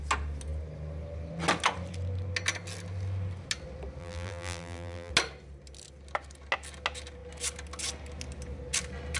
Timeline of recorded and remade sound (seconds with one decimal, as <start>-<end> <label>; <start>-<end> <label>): 0.0-4.0 recorded; 4.0-5.1 remade; 5.1-9.2 recorded